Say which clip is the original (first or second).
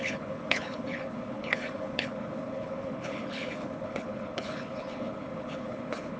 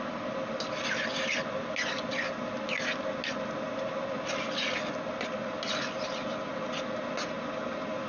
second